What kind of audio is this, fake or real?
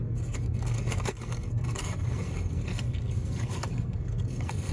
fake